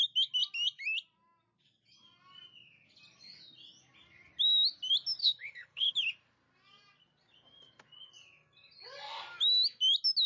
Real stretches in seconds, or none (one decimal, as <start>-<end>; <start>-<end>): 0.0-5.2; 5.9-10.3